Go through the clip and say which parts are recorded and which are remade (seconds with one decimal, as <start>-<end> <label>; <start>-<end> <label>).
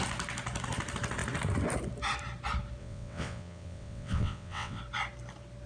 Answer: 0.0-2.8 recorded; 2.8-4.8 remade; 4.8-5.7 recorded